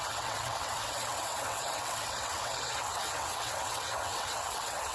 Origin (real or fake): fake